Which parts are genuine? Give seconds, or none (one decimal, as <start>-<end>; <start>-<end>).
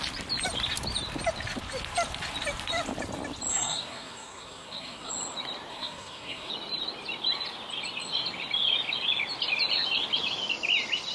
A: 0.0-3.5; 5.1-5.7; 6.5-11.1